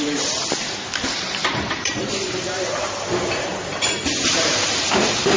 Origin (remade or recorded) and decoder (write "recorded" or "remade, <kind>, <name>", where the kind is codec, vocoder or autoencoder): remade, vocoder, BigVGAN v2